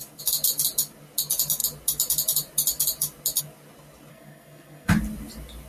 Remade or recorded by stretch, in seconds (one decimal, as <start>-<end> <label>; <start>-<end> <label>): 0.0-4.1 recorded; 4.1-4.9 remade; 4.9-5.7 recorded